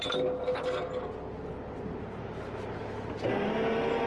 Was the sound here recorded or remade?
recorded